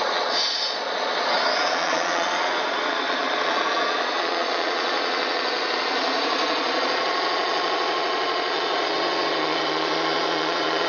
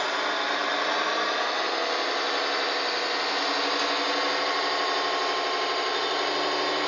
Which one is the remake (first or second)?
first